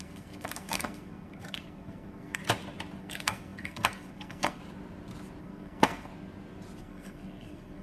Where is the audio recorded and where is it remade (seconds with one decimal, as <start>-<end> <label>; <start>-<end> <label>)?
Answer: 0.0-2.4 remade; 2.4-3.0 recorded; 3.0-4.6 remade; 4.6-5.4 recorded; 5.4-6.1 remade; 6.1-6.8 recorded; 6.8-7.8 remade